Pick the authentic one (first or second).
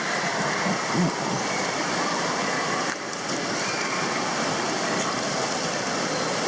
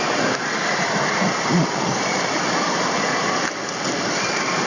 first